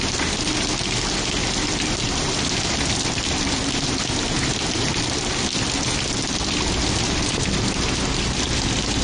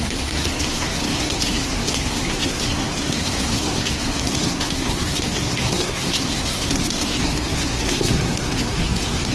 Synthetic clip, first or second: second